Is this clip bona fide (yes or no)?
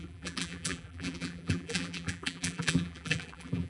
no